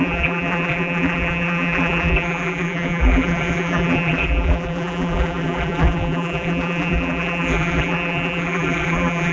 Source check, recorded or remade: remade